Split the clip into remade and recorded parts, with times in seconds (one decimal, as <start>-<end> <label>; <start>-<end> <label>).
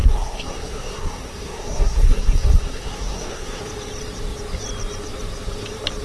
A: 0.0-3.6 remade; 3.6-6.0 recorded